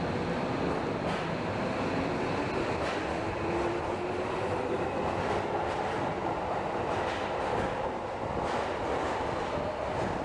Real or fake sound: real